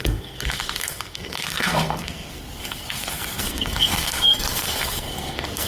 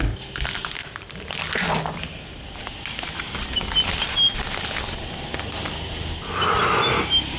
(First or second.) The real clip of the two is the second